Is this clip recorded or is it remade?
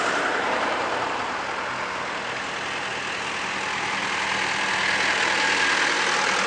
recorded